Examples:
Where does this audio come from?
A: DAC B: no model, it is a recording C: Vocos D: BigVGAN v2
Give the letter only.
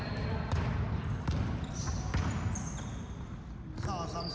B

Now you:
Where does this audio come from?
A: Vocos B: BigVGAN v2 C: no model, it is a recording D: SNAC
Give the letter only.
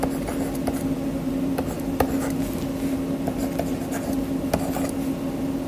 C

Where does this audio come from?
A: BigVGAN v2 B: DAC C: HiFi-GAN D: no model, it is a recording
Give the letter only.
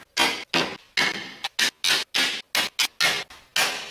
D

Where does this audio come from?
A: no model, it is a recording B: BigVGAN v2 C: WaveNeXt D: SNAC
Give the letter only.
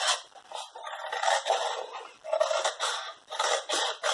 A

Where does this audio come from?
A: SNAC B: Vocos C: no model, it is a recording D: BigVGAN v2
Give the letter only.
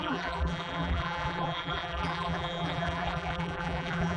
D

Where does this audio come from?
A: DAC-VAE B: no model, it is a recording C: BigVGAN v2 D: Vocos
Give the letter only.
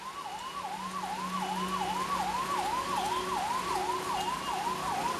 B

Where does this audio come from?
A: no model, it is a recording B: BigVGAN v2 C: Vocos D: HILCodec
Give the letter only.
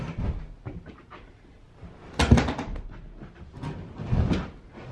A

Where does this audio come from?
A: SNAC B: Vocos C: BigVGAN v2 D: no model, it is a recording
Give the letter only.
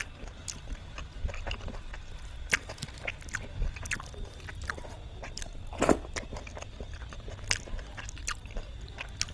D